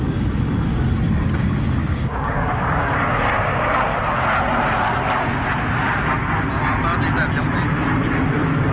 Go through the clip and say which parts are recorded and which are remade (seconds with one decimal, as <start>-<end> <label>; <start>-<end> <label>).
0.0-1.8 recorded; 1.8-4.0 remade; 4.0-8.7 recorded

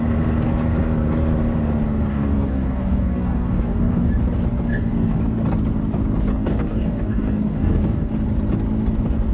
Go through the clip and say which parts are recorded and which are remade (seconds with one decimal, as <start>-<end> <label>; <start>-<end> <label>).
0.0-2.1 recorded; 2.1-4.1 remade; 4.1-4.7 recorded; 4.7-5.2 remade; 5.2-6.3 recorded; 6.3-8.1 remade; 8.1-9.3 recorded

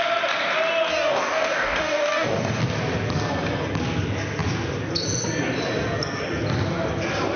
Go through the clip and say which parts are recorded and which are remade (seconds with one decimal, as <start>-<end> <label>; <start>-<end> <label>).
0.0-0.9 recorded; 0.9-2.6 remade; 2.6-7.4 recorded

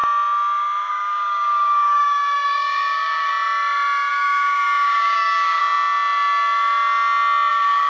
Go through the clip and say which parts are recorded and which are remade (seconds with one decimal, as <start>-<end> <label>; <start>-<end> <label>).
0.0-0.9 recorded; 0.9-3.3 remade; 3.3-4.1 recorded; 4.1-5.6 remade; 5.6-7.5 recorded; 7.5-7.9 remade